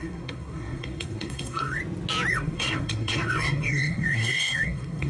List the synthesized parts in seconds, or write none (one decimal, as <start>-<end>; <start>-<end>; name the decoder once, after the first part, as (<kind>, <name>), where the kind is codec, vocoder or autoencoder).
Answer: 0.0-1.8 (codec, SNAC); 2.3-5.1